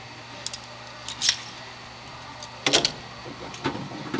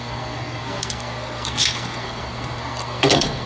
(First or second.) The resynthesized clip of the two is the second